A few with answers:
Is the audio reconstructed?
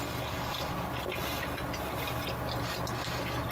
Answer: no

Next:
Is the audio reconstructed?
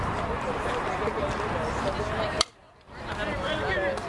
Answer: no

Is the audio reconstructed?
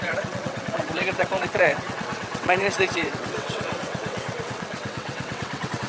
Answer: yes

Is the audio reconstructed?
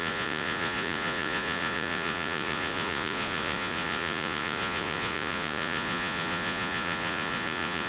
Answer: yes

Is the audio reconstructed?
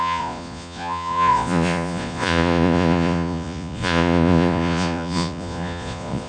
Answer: yes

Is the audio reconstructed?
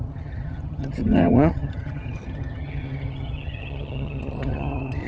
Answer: yes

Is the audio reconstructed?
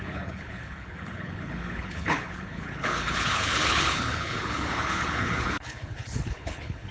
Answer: yes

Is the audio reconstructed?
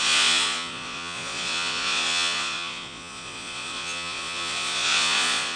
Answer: yes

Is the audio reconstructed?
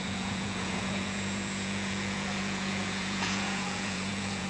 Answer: yes